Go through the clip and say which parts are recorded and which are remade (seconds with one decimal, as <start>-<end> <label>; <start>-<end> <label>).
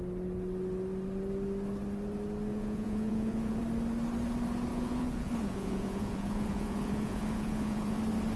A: 0.0-2.5 recorded; 2.5-3.6 remade; 3.6-4.7 recorded; 4.7-8.0 remade; 8.0-8.4 recorded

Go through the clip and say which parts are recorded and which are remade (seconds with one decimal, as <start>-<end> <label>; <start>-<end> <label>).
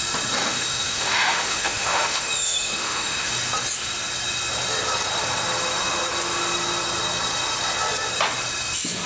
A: 0.0-0.4 recorded; 0.4-3.3 remade; 3.3-9.1 recorded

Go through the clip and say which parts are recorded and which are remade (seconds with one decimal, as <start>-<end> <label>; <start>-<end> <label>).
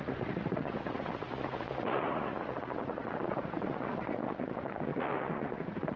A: 0.0-6.0 remade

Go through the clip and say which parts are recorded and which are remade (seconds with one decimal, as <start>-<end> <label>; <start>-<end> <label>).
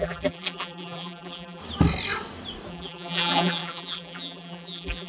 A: 0.0-1.6 remade; 1.6-2.7 recorded; 2.7-5.1 remade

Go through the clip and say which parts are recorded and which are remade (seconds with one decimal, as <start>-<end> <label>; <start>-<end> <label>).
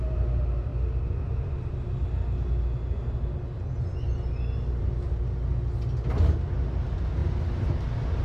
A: 0.0-8.2 recorded